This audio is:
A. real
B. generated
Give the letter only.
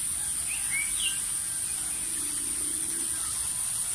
A